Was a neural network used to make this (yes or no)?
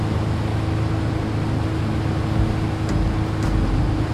no